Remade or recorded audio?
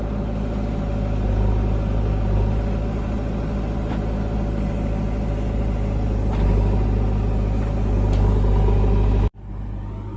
recorded